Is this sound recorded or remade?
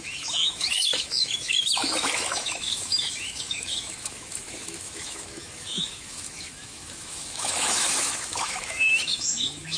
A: remade